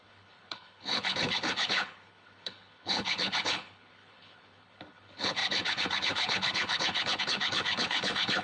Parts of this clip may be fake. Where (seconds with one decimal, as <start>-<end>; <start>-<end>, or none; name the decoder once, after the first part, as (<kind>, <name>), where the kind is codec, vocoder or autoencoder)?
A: 0.0-8.4 (codec, HILCodec)

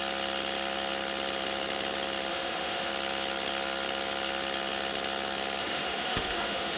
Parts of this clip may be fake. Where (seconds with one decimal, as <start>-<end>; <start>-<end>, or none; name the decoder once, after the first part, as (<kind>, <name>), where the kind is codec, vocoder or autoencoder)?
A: 2.3-2.9 (autoencoder, DAC-VAE); 5.6-6.8

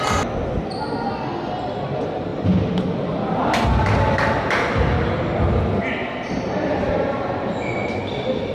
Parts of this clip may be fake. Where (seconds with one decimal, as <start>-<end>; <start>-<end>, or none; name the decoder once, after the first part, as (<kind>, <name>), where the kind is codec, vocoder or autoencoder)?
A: 6.0-8.0 (vocoder, BigVGAN v2)

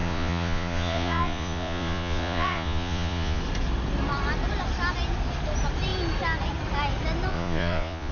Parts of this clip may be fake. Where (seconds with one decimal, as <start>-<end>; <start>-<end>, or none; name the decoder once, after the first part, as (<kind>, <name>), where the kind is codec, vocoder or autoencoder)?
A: 0.0-3.4 (vocoder, Vocos); 7.3-8.1

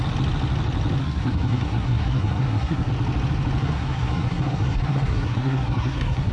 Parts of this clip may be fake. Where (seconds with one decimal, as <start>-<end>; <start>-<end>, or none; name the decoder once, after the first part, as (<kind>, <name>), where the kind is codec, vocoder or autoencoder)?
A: 1.0-2.9 (codec, SNAC); 3.6-6.3

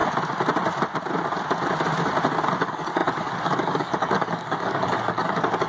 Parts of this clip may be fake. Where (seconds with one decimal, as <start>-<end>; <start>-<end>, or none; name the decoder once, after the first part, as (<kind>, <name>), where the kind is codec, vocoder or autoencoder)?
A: 2.6-5.7 (codec, DAC)

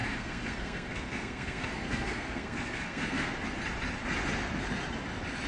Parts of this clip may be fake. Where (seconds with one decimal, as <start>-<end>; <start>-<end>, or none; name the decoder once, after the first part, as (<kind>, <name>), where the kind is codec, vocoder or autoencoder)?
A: 0.0-3.3 (codec, SNAC)